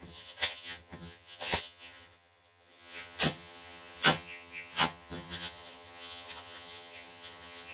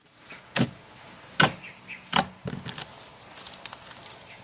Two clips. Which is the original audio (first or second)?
second